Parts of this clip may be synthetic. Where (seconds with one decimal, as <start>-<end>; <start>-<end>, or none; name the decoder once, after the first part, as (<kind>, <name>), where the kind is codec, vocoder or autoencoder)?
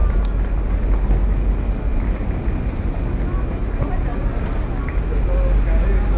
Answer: none